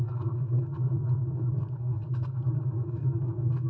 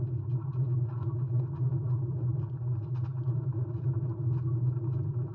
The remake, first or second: first